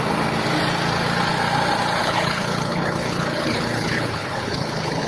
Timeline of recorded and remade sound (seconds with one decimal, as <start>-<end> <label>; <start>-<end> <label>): 0.0-2.0 recorded; 2.0-5.1 remade